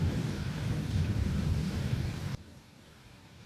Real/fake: fake